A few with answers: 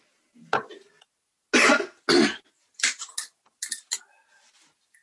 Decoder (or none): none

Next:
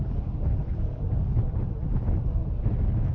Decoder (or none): none